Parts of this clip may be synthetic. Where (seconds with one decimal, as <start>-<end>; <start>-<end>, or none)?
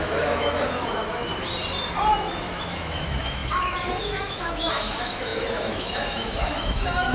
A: 0.0-1.3; 2.1-7.1